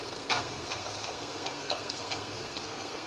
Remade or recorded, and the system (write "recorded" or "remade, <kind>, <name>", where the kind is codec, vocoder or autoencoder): remade, codec, SNAC